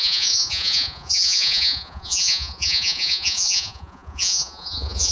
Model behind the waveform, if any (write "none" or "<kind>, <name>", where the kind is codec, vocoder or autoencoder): vocoder, Vocos